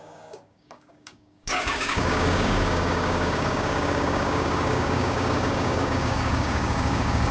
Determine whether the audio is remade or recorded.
remade